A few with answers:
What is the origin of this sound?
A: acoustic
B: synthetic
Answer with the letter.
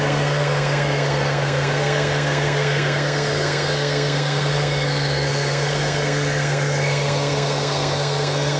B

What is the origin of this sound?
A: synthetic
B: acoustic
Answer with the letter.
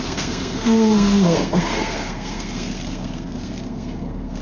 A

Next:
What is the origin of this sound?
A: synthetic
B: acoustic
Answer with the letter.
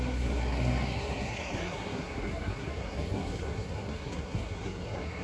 A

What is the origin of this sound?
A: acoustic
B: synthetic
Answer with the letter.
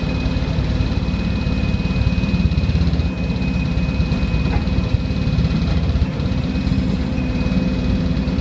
B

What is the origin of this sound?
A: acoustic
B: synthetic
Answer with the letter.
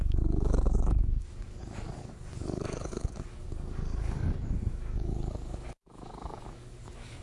B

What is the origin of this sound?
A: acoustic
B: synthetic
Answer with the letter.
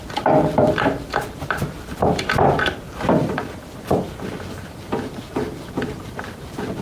B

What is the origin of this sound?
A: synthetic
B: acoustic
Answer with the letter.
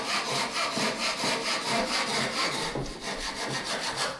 B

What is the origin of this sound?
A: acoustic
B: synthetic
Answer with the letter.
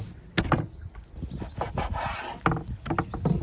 A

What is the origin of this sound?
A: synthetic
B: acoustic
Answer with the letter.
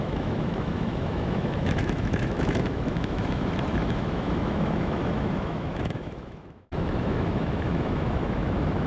A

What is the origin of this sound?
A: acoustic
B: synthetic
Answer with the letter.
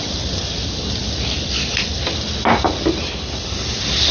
A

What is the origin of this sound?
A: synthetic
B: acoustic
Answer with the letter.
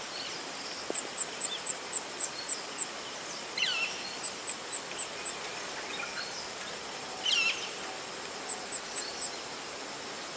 B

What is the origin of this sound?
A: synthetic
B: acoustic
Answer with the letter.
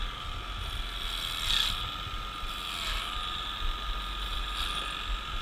B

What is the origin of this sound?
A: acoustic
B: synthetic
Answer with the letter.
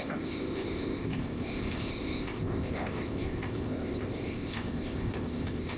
B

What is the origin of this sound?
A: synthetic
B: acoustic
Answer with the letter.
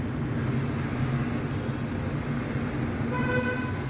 B